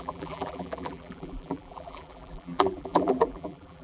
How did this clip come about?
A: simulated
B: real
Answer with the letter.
A